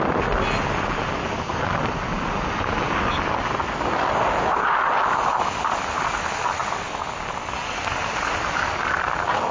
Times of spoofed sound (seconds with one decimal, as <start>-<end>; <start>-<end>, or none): none